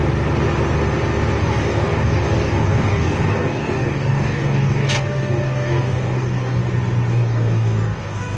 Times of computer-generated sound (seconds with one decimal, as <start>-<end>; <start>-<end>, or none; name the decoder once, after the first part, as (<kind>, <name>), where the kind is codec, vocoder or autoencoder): 1.4-6.6 (codec, DAC); 7.1-8.4

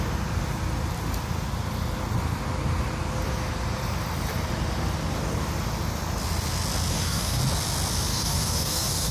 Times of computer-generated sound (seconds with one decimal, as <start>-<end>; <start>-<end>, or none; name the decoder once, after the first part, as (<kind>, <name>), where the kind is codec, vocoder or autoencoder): 6.9-7.4 (codec, DAC); 8.1-9.1

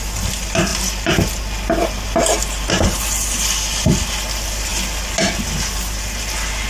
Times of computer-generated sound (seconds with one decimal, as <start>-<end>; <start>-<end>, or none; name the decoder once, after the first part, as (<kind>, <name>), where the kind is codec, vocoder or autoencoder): none

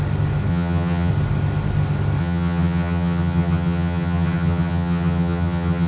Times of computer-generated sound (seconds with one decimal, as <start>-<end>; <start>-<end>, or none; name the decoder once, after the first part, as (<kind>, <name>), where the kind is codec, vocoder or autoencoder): 0.5-1.1 (vocoder, HiFi-GAN); 2.2-5.9